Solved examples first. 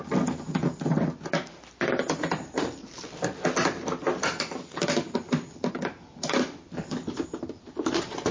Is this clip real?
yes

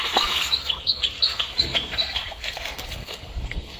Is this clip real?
no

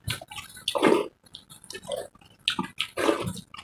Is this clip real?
yes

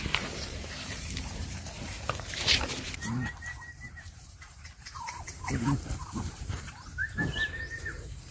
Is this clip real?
no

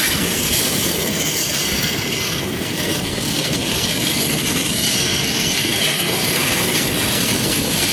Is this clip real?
no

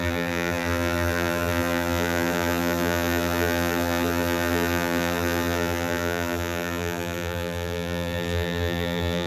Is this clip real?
no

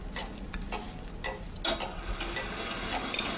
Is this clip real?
yes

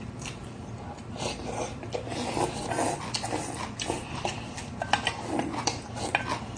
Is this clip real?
yes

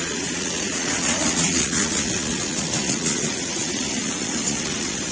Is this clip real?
no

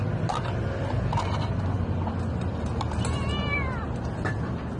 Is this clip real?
yes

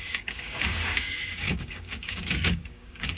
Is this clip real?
no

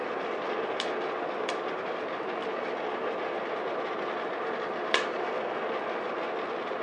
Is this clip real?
yes